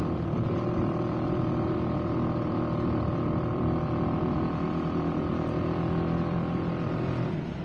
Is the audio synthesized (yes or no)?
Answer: yes